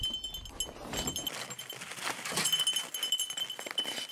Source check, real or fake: real